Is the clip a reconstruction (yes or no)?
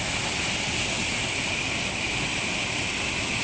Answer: no